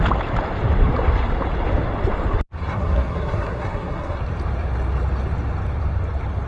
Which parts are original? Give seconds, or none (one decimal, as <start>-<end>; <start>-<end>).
0.0-2.6; 4.2-6.5